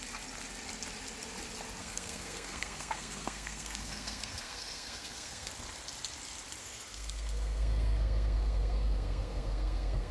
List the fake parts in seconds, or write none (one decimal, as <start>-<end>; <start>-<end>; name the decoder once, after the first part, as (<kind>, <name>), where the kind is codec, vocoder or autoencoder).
1.8-5.5 (codec, SNAC); 6.6-10.1